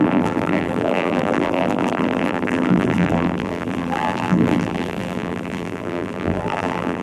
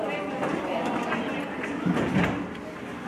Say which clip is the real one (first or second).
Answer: second